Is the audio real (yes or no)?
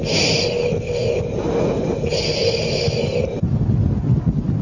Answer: yes